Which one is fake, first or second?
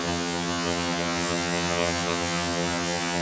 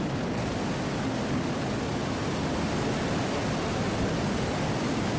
first